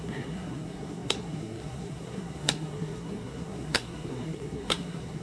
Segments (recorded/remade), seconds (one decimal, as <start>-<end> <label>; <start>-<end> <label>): 0.0-5.2 remade